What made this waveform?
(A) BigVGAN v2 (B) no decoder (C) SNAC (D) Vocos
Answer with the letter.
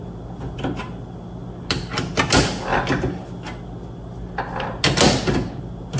B